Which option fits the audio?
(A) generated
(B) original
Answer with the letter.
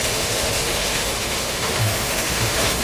A